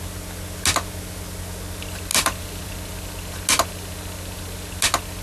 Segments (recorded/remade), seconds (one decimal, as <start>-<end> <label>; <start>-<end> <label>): 0.0-2.1 recorded; 2.1-2.7 remade; 2.7-5.2 recorded